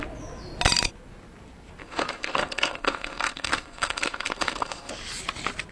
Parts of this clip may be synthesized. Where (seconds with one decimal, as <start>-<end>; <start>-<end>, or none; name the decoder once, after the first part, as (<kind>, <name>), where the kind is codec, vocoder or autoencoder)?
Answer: 1.8-4.9 (codec, SNAC)